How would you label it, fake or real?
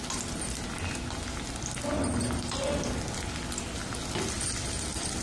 real